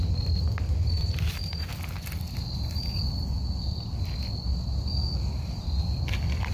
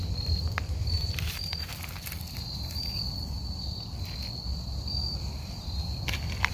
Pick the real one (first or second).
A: first